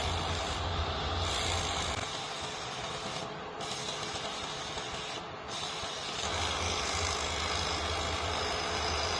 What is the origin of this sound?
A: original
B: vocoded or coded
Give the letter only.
A